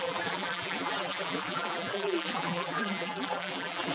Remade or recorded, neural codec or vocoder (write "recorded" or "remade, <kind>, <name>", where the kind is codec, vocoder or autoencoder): remade, vocoder, BigVGAN v2